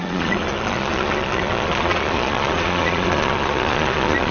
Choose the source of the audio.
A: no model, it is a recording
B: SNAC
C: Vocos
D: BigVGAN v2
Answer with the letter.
C